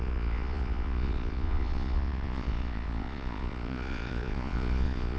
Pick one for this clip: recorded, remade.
remade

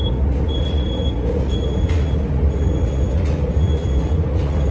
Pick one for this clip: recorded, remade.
remade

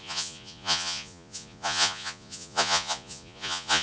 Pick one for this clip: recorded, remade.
remade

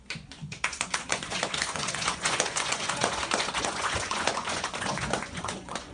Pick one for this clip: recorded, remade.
remade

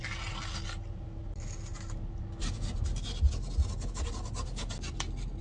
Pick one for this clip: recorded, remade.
recorded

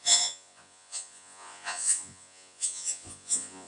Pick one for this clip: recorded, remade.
remade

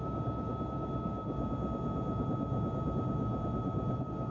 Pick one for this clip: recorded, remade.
recorded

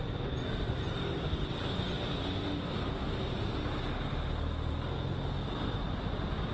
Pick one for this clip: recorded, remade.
recorded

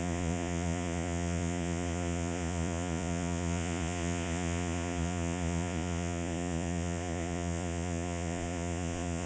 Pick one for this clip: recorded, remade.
remade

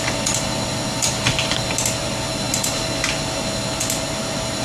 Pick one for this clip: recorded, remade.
recorded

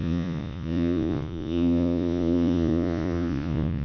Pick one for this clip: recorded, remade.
remade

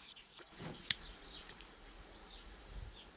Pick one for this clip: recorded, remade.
remade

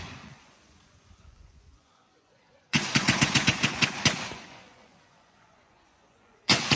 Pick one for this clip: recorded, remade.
remade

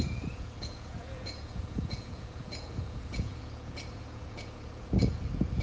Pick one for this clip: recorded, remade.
remade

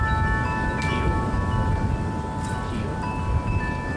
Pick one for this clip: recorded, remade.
recorded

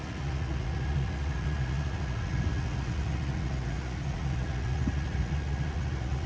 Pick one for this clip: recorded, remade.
remade